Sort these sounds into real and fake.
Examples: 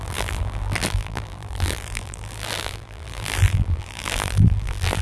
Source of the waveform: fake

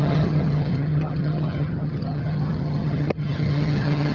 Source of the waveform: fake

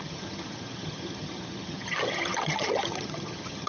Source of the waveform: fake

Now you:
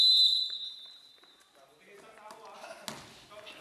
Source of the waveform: real